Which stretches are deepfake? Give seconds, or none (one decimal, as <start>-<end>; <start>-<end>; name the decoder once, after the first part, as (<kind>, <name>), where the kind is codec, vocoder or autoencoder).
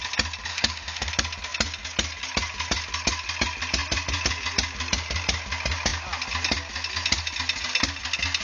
0.5-1.1 (autoencoder, DAC-VAE)